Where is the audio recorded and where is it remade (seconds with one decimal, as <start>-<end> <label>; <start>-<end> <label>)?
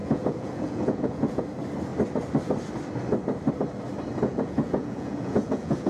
0.0-1.4 remade; 1.4-4.3 recorded; 4.3-5.9 remade